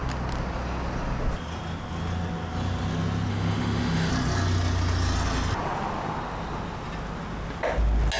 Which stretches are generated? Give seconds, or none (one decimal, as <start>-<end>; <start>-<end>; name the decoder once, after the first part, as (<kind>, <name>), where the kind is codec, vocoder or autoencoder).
3.3-4.1 (autoencoder, DAC-VAE)